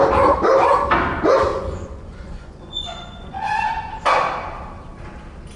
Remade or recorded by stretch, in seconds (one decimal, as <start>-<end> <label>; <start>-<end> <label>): 0.0-1.5 recorded; 1.5-3.7 remade; 3.7-5.6 recorded